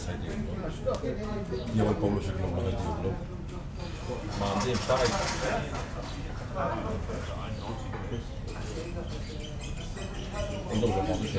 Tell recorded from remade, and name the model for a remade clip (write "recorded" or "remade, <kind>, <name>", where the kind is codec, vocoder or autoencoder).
recorded